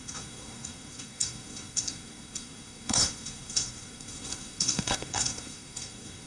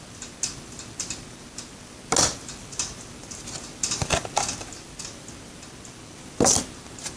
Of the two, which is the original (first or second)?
second